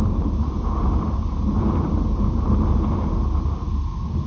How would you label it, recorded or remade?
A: recorded